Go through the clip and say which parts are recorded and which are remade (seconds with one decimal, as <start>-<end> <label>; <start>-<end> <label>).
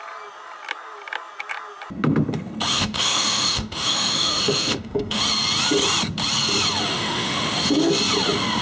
0.0-2.7 recorded; 2.7-5.2 remade; 5.2-6.9 recorded; 6.9-7.7 remade; 7.7-8.6 recorded